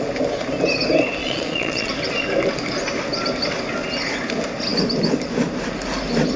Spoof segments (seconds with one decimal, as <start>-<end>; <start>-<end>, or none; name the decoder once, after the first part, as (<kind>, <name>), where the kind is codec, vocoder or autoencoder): 1.2-1.9 (vocoder, Vocos)